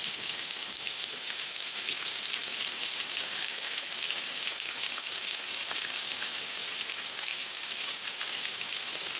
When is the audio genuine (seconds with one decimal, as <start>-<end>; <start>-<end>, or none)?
none